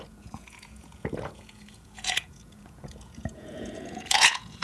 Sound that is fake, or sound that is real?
fake